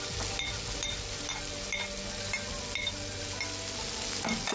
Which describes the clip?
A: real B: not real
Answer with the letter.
A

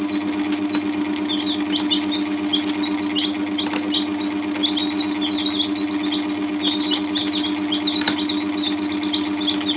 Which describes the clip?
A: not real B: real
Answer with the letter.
B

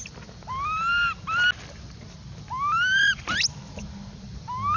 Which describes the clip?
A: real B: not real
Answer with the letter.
A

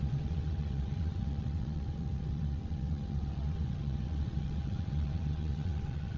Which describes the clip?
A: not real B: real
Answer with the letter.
A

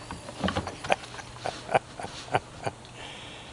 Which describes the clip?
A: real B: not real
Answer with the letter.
A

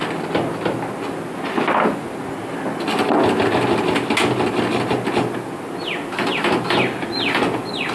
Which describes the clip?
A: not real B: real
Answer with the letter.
B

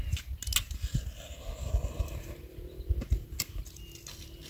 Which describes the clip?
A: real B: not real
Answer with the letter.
A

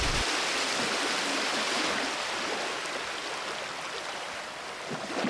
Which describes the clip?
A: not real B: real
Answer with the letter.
B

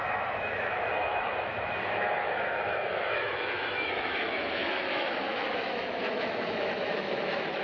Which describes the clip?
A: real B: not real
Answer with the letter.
B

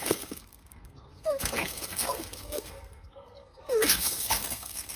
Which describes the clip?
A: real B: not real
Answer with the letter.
B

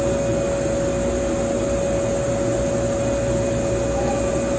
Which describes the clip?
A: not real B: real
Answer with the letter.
B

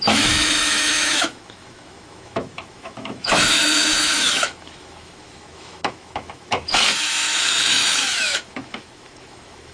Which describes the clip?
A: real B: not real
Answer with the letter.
B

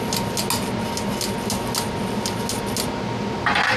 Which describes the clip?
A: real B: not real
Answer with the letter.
A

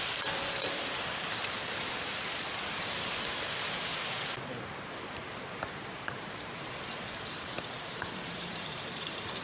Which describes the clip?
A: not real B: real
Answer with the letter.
A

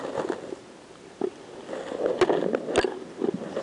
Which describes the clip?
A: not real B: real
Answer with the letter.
B